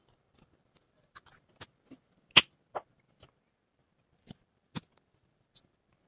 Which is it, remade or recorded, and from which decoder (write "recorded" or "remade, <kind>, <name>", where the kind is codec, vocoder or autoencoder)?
recorded